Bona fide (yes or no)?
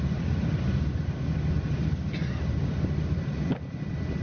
yes